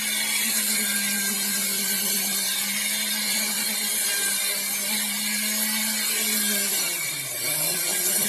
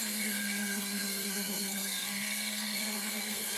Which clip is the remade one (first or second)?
second